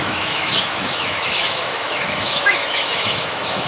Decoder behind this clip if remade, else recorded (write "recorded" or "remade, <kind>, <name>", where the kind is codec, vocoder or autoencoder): remade, autoencoder, DAC-VAE